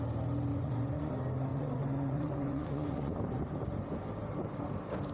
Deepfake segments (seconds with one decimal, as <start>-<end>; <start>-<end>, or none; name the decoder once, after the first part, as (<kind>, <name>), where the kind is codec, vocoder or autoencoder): 0.5-1.1 (vocoder, Vocos); 1.5-3.2